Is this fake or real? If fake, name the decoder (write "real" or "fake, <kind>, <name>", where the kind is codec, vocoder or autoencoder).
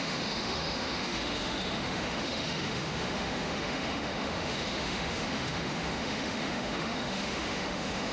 fake, autoencoder, DAC-VAE